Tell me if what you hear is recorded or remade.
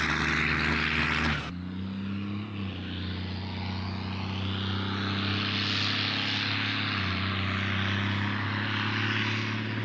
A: recorded